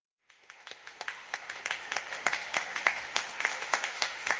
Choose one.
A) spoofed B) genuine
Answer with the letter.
A